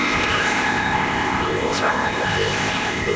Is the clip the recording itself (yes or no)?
no